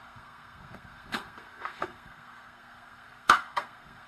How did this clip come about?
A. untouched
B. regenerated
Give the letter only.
B